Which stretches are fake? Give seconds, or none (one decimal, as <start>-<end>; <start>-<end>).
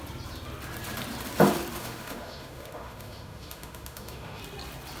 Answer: 1.8-4.4